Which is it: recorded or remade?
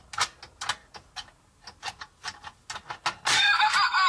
recorded